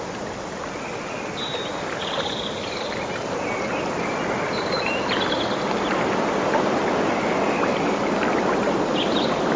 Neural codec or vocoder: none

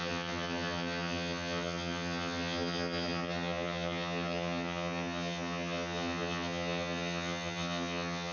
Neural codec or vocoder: vocoder, HiFi-GAN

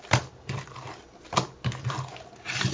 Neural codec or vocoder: none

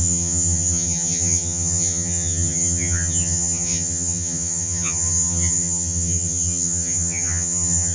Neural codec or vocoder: vocoder, HiFi-GAN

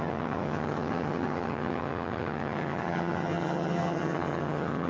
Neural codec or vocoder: vocoder, HiFi-GAN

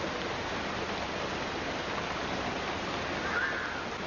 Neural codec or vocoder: none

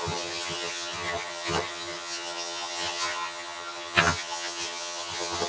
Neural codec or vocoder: vocoder, HiFi-GAN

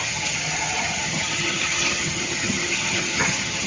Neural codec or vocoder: vocoder, HiFi-GAN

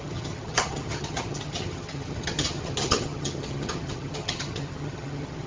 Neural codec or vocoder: vocoder, HiFi-GAN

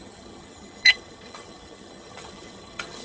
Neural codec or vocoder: vocoder, HiFi-GAN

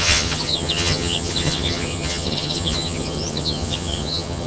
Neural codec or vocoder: vocoder, HiFi-GAN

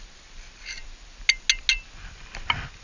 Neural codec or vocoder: none